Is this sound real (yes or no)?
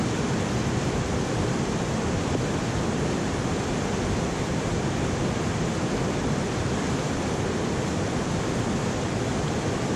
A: no